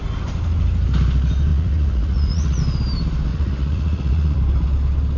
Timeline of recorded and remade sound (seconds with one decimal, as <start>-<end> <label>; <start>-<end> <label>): 0.0-1.5 recorded; 1.5-2.6 remade; 2.6-3.3 recorded; 3.3-4.4 remade; 4.4-5.2 recorded